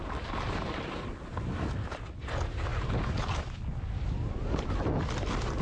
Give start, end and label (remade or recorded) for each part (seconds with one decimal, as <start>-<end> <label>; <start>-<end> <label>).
0.0-5.6 recorded